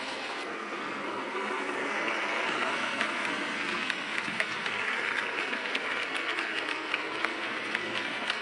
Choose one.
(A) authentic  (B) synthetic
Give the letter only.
B